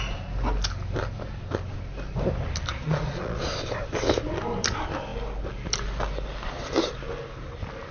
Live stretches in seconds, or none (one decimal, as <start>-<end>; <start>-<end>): 0.0-2.7; 3.5-7.9